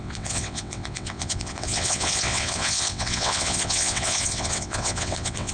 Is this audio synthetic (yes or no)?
yes